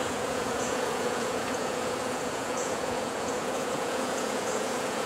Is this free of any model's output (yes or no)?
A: no